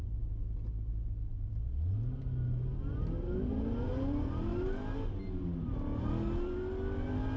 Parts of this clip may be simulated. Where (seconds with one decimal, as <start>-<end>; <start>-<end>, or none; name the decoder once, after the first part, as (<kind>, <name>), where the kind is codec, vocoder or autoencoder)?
none